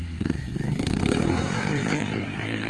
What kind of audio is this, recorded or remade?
remade